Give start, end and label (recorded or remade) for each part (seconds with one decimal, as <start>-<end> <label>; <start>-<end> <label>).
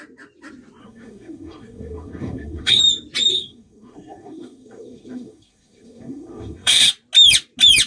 0.0-0.8 recorded; 0.8-2.8 remade; 2.8-3.3 recorded; 3.3-6.9 remade; 6.9-7.9 recorded